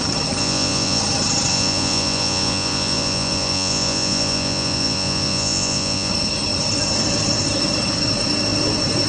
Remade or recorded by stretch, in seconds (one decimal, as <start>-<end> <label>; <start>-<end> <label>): 0.0-0.4 recorded; 0.4-1.0 remade; 1.0-1.5 recorded; 1.5-6.1 remade; 6.1-9.1 recorded